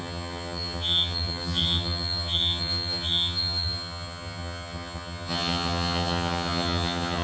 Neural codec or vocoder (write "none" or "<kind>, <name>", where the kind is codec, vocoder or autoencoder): vocoder, HiFi-GAN